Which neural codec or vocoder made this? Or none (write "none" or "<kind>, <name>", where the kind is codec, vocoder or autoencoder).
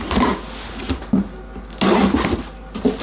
none